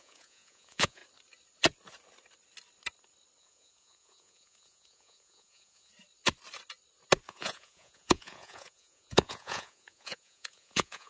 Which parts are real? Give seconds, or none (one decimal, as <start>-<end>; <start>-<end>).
1.0-3.4; 5.9-7.3

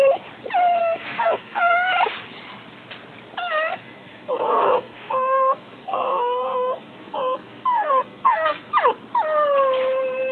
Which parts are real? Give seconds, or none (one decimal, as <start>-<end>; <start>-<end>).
0.0-0.8; 1.9-3.7; 8.7-10.3

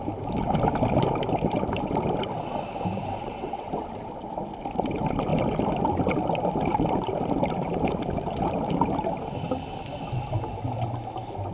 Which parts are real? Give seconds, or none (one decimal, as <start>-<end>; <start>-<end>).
0.0-3.2; 3.7-11.5

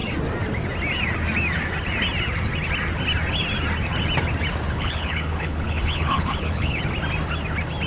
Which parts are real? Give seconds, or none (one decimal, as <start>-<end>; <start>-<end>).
0.0-4.7; 6.8-7.9